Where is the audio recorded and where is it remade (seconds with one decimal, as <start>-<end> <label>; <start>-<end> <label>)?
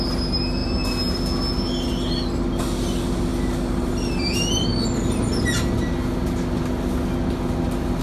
0.0-8.0 recorded